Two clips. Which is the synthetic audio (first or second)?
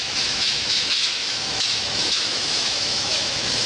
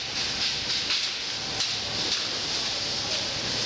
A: first